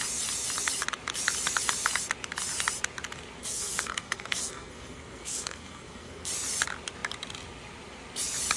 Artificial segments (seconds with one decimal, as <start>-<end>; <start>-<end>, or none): 3.4-6.3